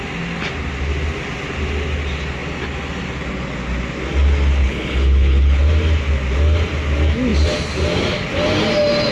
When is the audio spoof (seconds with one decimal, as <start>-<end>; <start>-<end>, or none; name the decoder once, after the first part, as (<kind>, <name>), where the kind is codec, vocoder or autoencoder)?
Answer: 4.6-5.6 (codec, HILCodec)